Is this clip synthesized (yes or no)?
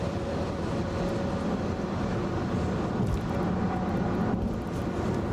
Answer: no